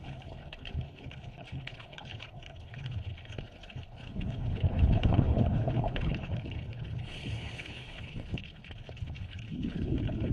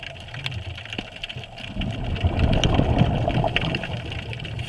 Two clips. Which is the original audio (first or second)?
second